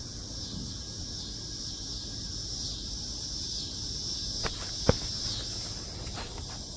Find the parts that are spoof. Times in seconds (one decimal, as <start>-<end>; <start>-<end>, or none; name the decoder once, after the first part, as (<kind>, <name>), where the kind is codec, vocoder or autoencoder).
none